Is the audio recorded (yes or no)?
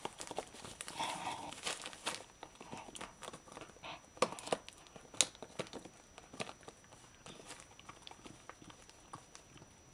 yes